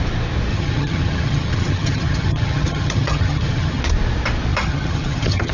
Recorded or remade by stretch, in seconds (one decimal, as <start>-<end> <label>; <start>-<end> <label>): 0.0-0.5 recorded; 0.5-3.8 remade; 3.8-4.5 recorded; 4.5-5.5 remade